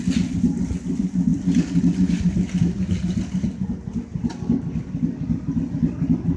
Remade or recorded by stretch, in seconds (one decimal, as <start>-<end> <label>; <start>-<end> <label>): 0.0-1.3 recorded; 1.3-2.3 remade; 2.3-6.4 recorded

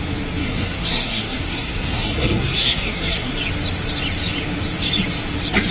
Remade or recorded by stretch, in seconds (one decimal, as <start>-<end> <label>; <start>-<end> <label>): 0.0-0.4 recorded; 0.4-3.3 remade; 3.3-5.7 recorded

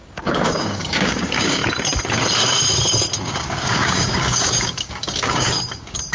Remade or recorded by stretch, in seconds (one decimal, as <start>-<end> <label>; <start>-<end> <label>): 0.0-1.6 remade; 1.6-3.2 recorded; 3.2-6.1 remade

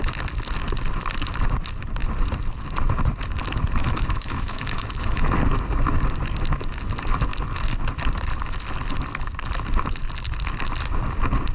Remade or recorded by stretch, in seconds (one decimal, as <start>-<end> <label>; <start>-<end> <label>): 0.0-3.8 recorded; 3.8-5.3 remade; 5.3-11.5 recorded